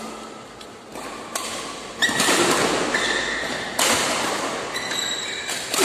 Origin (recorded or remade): recorded